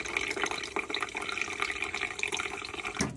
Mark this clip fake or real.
real